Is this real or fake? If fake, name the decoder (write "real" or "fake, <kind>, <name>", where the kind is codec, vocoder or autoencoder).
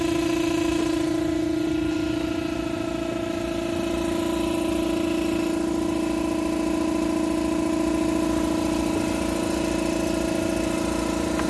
real